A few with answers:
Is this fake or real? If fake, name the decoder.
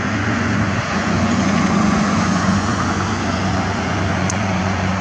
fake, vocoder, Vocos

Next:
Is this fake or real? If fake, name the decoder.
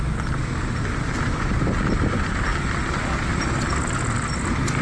real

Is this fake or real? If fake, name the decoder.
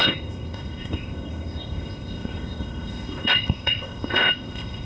fake, codec, ZipCodec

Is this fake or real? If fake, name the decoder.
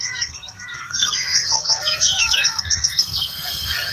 fake, codec, SNAC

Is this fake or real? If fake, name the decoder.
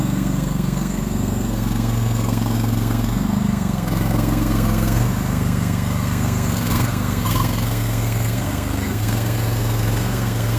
fake, codec, SNAC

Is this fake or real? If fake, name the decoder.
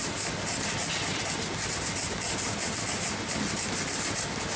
real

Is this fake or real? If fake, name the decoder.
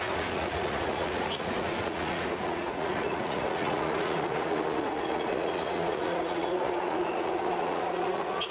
fake, vocoder, Vocos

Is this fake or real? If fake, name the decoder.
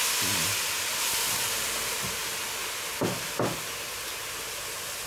real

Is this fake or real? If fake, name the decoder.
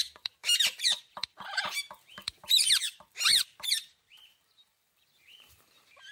fake, vocoder, BigVGAN v2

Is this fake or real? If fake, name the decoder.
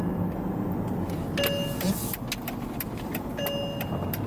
real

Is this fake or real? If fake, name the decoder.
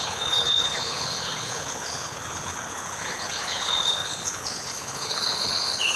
fake, codec, HILCodec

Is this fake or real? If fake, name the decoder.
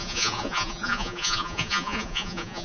fake, vocoder, Vocos